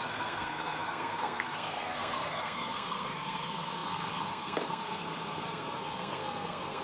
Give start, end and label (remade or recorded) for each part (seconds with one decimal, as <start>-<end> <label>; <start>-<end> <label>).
0.0-6.8 remade